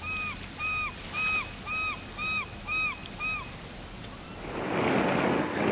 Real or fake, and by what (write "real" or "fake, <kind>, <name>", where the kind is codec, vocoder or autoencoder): real